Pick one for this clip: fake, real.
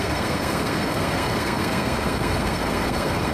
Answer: fake